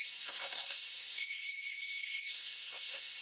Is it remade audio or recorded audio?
remade